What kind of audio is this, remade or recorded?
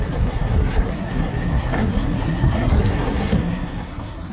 remade